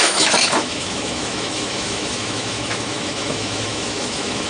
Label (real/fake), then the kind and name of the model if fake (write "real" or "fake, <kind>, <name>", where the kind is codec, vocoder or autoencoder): fake, autoencoder, DAC-VAE